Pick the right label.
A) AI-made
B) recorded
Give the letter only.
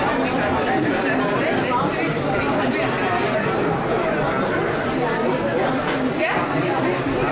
B